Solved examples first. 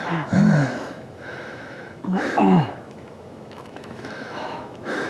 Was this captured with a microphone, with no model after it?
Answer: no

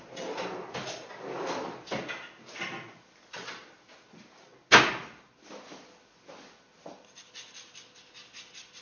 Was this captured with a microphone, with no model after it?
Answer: yes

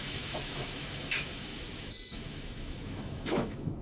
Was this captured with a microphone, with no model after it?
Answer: no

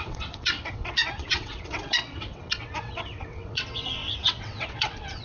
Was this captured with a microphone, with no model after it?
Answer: no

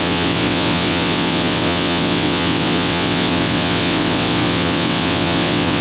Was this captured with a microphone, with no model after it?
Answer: no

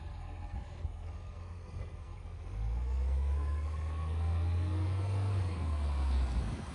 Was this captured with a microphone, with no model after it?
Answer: no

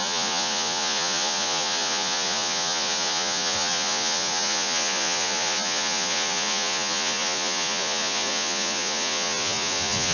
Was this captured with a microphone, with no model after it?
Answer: no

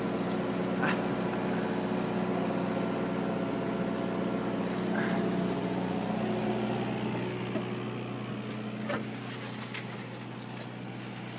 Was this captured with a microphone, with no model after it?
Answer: yes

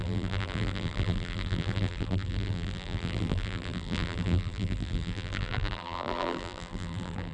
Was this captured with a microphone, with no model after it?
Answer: no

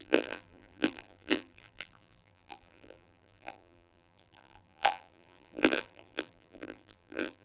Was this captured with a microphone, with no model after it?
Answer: no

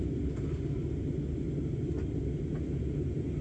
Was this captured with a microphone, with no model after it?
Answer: yes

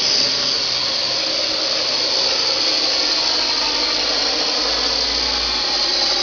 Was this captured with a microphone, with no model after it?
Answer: yes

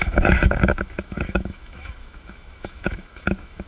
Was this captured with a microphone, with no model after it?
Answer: no